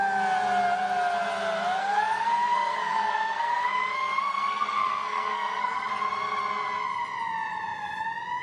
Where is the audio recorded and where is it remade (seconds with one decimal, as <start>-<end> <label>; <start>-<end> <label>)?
0.0-1.8 recorded; 1.8-5.9 remade; 5.9-8.4 recorded